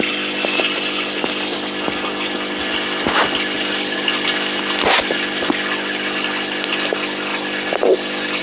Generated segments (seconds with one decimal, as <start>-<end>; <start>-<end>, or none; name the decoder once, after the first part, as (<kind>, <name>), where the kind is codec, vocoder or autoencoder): none